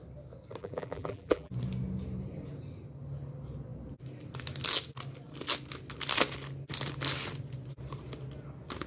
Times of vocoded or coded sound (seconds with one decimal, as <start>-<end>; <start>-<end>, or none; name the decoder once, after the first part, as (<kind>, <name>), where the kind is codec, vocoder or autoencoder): 0.6-1.5 (vocoder, BigVGAN v2)